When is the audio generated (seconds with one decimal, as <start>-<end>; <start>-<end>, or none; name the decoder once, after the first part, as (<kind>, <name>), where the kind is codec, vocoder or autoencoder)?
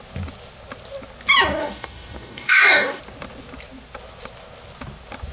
1.6-3.0 (codec, DAC)